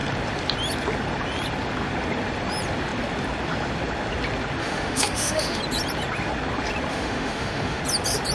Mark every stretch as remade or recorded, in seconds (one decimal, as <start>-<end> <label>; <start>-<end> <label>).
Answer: 0.0-4.6 recorded; 4.6-5.6 remade; 5.6-6.9 recorded; 6.9-7.8 remade; 7.8-8.3 recorded